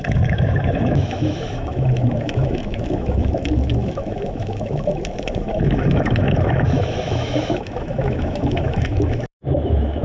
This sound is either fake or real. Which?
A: fake